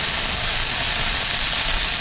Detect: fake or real real